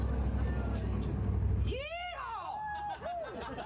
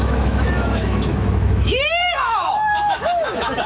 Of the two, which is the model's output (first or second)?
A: second